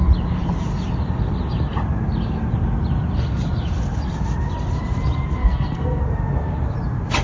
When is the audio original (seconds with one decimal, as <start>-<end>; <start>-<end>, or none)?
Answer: 0.0-5.4; 6.0-7.2